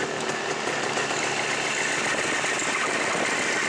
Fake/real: real